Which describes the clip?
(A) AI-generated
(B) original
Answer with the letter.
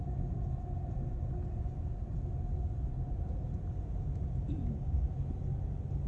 B